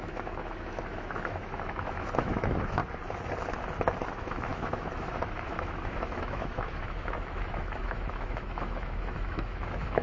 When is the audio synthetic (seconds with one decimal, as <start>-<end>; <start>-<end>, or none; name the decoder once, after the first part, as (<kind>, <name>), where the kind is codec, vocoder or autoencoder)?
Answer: 0.0-2.8 (autoencoder, DAC-VAE); 4.1-10.0